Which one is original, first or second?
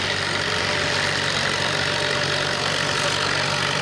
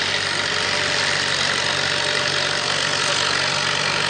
second